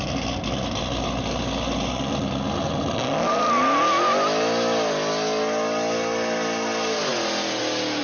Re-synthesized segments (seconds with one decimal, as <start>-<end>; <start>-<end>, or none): none